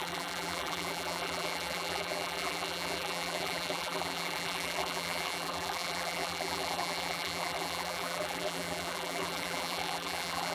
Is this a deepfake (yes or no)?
yes